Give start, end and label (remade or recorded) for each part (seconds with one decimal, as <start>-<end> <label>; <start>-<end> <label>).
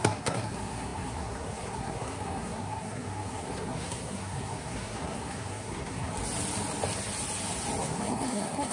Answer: 0.0-6.1 remade; 6.1-7.8 recorded; 7.8-8.7 remade